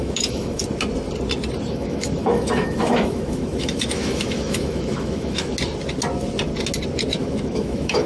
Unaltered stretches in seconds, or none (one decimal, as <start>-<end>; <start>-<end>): 0.6-1.7; 5.5-7.2

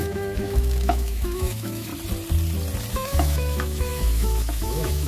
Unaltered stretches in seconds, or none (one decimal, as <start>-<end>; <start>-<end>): 1.9-2.9

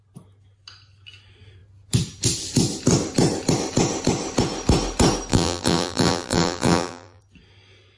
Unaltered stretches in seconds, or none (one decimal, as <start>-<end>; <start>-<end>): 0.0-5.3; 7.2-8.0

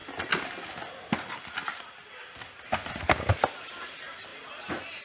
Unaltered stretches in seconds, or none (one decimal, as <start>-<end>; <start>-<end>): 0.0-0.9; 3.3-3.9; 4.3-5.0

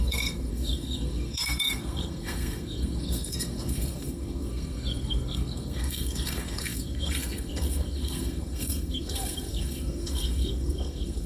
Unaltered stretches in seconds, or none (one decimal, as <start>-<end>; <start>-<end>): none

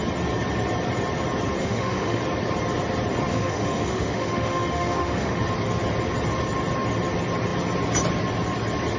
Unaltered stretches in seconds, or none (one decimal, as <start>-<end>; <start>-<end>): 0.0-1.6; 2.2-3.3; 5.4-9.0

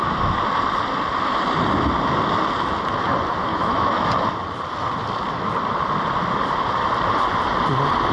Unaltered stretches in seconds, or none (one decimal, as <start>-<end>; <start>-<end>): 0.0-3.5; 4.1-8.1

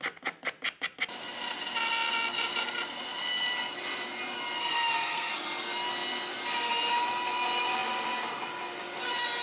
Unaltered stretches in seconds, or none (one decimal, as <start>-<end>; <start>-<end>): 0.0-4.6; 5.3-9.4